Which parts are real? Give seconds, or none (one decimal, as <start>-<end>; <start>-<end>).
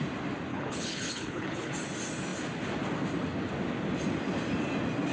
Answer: 0.0-0.5; 1.7-5.1